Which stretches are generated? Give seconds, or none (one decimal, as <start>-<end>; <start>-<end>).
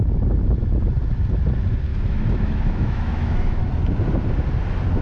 1.9-3.6